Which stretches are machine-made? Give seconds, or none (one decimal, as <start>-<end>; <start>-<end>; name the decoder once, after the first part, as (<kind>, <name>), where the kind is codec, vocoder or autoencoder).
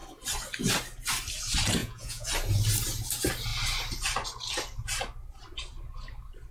1.8-2.3 (vocoder, Vocos)